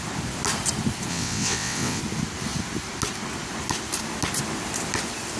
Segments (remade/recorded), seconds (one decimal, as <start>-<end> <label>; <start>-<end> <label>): 0.0-1.1 recorded; 1.1-2.0 remade; 2.0-5.4 recorded